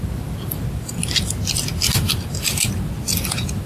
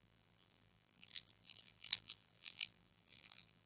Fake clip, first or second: second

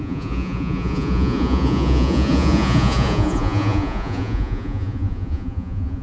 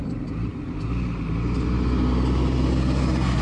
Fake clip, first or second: first